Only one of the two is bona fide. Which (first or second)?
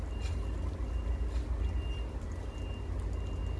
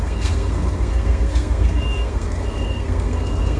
first